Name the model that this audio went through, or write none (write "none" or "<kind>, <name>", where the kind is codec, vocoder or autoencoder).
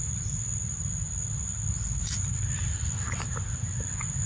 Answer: none